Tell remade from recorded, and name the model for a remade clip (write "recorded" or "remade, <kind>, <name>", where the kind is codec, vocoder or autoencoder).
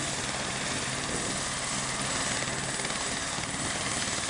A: recorded